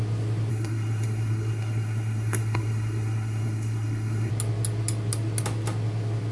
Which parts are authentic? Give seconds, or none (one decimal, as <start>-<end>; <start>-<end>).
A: 0.0-0.5; 4.3-6.3